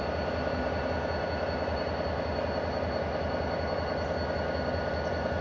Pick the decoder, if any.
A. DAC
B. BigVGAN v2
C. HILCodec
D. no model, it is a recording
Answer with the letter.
D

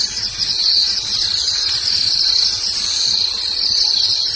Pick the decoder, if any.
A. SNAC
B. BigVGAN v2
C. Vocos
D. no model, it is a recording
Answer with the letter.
D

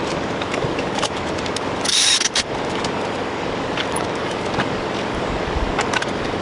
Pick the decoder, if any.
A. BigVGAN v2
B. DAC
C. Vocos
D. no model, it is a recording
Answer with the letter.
B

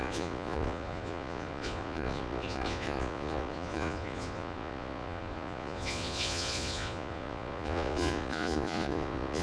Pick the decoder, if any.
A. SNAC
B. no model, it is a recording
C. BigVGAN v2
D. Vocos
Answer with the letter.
D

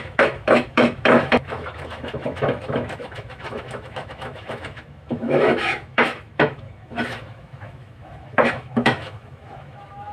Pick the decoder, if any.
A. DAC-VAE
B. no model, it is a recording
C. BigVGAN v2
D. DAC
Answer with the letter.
A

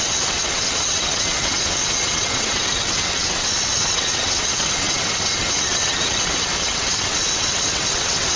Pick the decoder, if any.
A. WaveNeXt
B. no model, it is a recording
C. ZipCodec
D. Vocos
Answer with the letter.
A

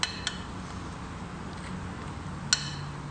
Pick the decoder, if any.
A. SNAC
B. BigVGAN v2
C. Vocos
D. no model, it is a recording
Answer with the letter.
D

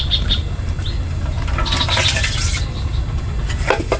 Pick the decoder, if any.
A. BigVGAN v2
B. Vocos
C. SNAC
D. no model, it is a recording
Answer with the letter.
D